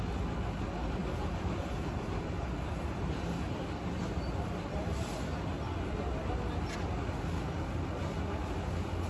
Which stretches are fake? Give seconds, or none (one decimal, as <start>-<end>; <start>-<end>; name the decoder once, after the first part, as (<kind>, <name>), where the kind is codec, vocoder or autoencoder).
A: 1.0-5.1 (vocoder, BigVGAN v2)